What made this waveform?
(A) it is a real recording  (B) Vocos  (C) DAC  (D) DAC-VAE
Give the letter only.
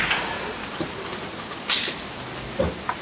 A